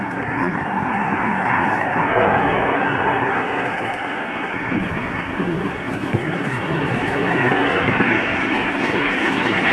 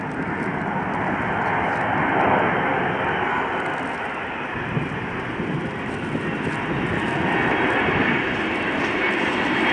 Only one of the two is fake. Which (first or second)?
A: first